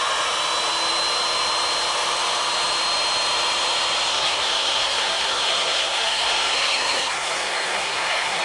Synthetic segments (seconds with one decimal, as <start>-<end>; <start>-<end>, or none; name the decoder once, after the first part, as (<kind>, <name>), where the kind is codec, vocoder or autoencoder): 4.1-8.4 (codec, SNAC)